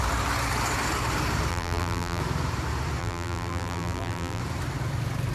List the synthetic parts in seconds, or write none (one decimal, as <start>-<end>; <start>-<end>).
1.5-2.2; 3.0-4.4